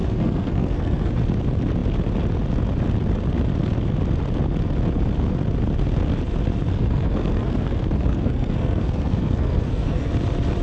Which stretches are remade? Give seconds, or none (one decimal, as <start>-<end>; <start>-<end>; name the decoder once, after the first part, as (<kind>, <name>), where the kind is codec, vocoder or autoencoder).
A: 0.0-1.1 (codec, SNAC); 6.7-10.1